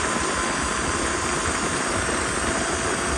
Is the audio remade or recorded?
recorded